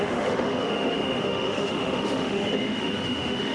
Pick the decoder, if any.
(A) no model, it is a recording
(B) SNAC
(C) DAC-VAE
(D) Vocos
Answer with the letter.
C